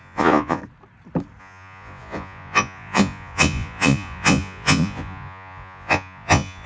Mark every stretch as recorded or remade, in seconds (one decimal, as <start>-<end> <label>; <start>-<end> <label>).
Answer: 0.0-0.6 remade; 0.6-1.4 recorded; 1.4-6.7 remade